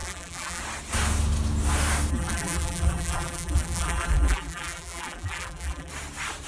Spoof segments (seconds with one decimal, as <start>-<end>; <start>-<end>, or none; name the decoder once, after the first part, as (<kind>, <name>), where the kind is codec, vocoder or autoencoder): 0.0-0.6 (vocoder, BigVGAN v2); 2.1-5.9